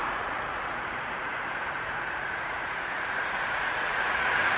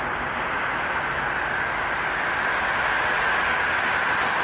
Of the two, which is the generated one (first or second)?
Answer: first